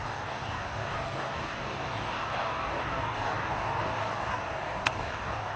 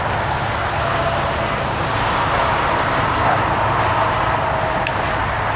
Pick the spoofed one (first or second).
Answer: first